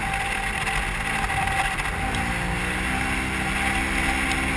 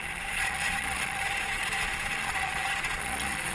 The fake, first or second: second